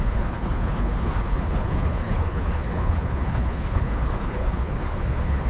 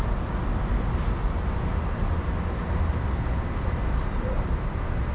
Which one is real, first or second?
second